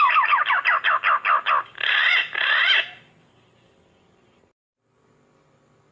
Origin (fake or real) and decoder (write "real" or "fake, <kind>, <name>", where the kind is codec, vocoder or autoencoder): real